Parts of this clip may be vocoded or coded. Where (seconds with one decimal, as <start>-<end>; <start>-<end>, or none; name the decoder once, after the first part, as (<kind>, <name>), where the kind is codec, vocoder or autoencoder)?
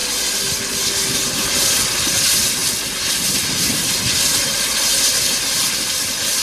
none